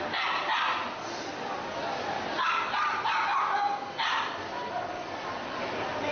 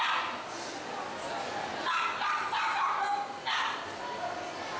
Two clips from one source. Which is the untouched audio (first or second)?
second